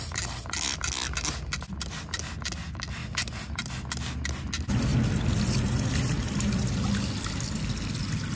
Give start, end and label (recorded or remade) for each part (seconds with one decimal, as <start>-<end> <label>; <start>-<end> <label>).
0.0-8.4 recorded